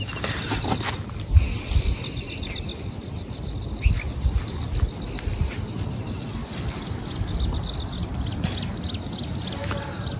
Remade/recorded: recorded